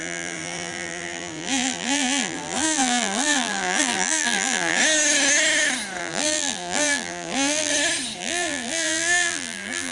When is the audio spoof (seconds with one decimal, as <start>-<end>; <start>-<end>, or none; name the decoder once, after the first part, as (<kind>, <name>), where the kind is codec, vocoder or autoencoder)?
0.0-4.8 (vocoder, BigVGAN v2); 6.0-7.7; 8.2-9.9